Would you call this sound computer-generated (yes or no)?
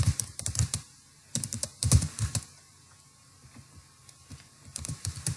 yes